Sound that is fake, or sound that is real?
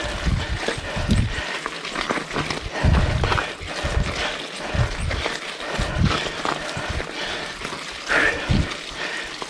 real